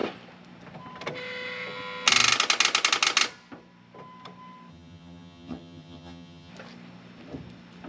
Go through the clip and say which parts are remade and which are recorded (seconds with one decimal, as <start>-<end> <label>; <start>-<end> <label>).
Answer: 0.0-4.7 recorded; 4.7-6.5 remade; 6.5-7.9 recorded